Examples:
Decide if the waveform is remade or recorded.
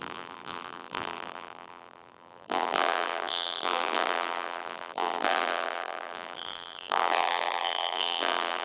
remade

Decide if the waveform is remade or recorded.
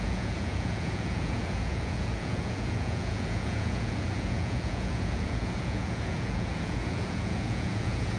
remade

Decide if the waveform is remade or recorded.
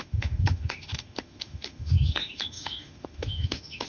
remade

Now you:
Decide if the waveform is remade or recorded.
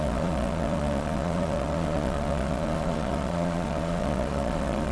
remade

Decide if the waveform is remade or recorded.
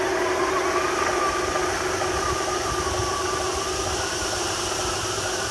recorded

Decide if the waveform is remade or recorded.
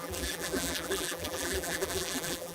remade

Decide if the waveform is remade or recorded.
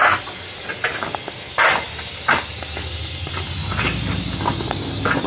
recorded